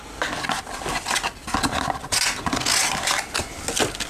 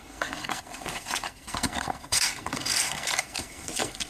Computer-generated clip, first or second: second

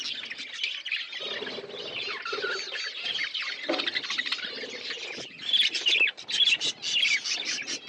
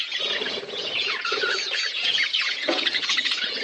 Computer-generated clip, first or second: second